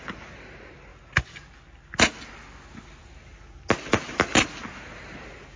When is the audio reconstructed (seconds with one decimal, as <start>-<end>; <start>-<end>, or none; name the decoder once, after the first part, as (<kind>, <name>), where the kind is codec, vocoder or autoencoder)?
none